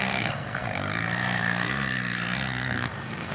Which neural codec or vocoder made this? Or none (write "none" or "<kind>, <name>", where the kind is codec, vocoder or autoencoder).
codec, SNAC